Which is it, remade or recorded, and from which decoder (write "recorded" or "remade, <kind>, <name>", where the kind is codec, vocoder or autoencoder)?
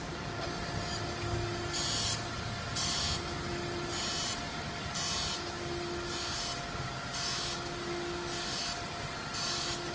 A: recorded